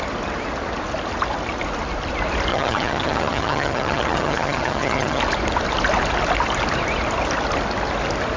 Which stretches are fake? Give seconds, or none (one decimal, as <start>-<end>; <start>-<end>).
2.5-5.2